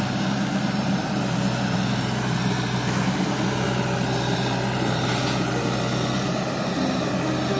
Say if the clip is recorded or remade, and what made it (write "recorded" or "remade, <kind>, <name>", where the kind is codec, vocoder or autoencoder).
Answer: recorded